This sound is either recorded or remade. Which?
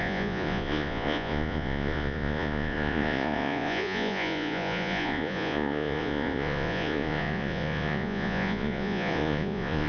remade